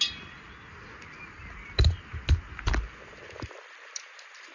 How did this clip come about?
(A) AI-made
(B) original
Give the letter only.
B